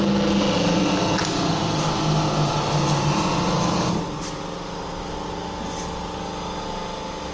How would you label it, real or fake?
real